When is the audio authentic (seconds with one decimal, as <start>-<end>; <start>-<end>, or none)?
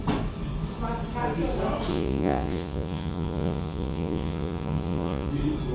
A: 0.0-1.9; 5.3-5.7